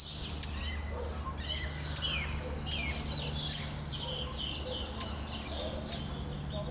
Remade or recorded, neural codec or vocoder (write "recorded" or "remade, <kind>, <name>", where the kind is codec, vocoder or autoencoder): recorded